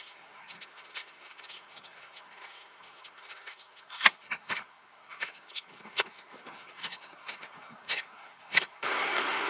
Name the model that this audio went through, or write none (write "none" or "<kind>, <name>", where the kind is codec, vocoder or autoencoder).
codec, SNAC